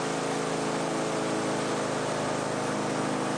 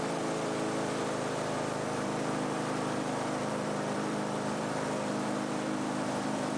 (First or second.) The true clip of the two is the first